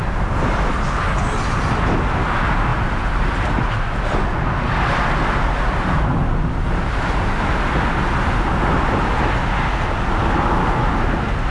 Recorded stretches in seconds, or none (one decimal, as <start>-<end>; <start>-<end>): 0.0-11.5